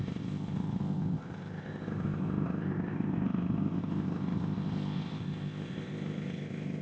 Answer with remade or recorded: remade